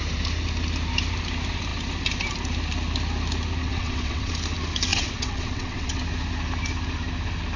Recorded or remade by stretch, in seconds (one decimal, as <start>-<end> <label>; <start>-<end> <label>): 0.0-3.6 recorded; 3.6-4.3 remade; 4.3-4.9 recorded; 4.9-6.0 remade; 6.0-7.6 recorded